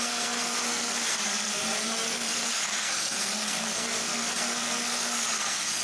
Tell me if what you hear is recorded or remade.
remade